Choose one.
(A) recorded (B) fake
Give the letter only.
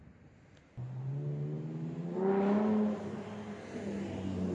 A